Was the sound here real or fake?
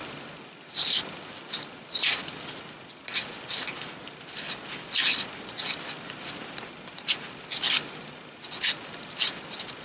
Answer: real